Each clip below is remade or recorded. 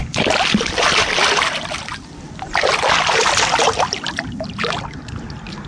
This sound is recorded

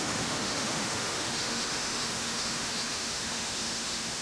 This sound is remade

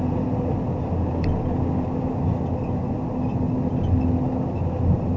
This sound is recorded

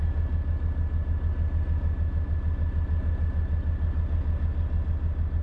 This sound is recorded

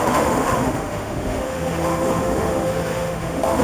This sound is remade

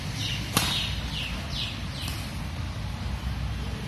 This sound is recorded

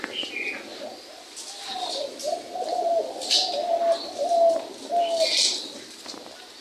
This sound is recorded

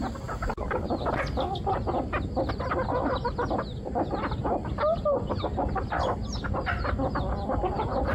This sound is recorded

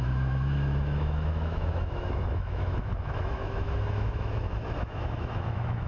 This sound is remade